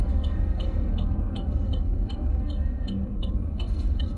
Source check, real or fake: fake